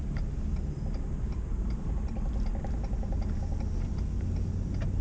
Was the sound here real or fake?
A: real